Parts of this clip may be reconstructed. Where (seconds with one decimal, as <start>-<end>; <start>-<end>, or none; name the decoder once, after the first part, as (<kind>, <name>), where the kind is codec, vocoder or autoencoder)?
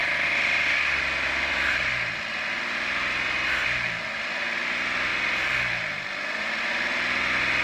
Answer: 0.0-4.6 (vocoder, BigVGAN v2)